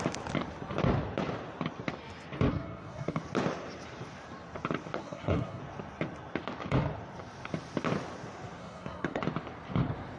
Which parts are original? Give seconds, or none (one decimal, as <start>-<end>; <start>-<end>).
0.0-2.5; 3.2-5.0; 5.6-8.6; 9.2-10.2